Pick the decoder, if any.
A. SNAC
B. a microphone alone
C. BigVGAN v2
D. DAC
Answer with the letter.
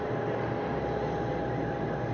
B